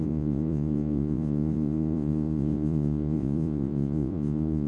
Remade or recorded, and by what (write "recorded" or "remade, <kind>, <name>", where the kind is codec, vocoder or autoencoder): remade, vocoder, Vocos